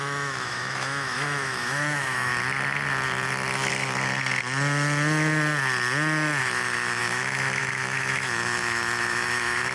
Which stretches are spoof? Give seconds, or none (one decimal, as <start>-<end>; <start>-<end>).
0.0-2.3; 6.4-9.7